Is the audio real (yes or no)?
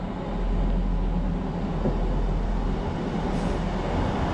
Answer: yes